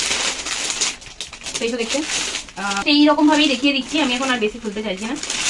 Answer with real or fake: real